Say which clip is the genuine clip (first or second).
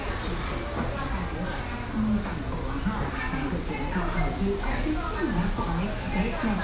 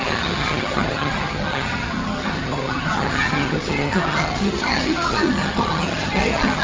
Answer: first